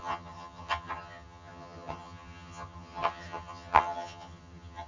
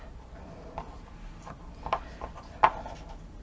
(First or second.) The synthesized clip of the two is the first